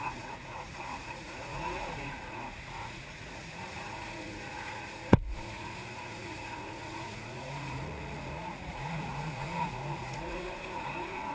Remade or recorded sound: remade